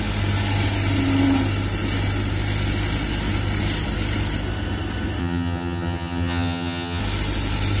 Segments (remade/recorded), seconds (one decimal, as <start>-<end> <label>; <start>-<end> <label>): 0.0-5.2 recorded; 5.2-7.0 remade; 7.0-7.8 recorded